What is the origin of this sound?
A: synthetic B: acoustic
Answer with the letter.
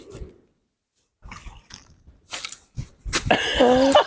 B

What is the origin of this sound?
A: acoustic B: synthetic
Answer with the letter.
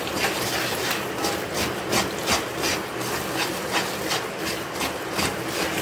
A